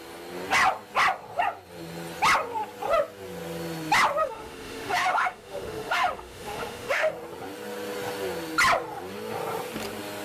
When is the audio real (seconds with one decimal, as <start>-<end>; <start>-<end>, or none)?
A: 0.0-4.2; 7.1-10.2